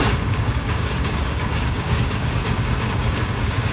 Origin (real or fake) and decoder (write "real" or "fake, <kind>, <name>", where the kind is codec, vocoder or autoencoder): fake, codec, DAC